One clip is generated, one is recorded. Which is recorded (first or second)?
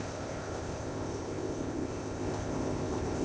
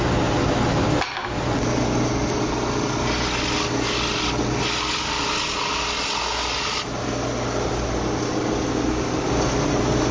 second